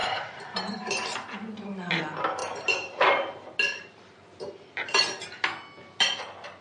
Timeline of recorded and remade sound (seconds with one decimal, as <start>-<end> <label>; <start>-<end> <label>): 0.0-2.0 remade; 2.0-2.4 recorded; 2.4-4.5 remade; 4.5-6.6 recorded